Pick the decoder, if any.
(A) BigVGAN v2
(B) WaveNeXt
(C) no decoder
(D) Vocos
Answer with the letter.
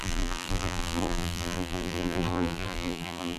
A